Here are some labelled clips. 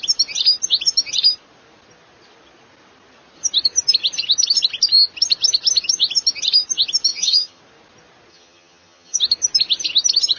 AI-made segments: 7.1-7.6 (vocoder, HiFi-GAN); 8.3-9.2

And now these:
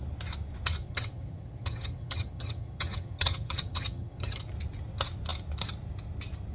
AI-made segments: 0.8-4.4 (vocoder, HiFi-GAN)

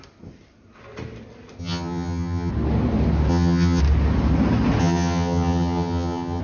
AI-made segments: 1.6-2.5 (vocoder, HiFi-GAN); 3.3-3.8; 4.8-6.4

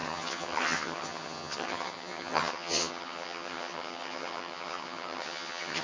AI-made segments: 0.0-5.8 (vocoder, HiFi-GAN)